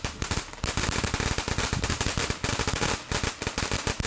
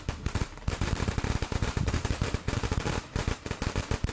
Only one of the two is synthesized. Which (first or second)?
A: second